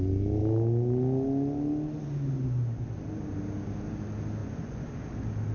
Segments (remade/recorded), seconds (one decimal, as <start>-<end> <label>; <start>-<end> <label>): 0.0-4.4 recorded; 4.4-5.0 remade; 5.0-5.5 recorded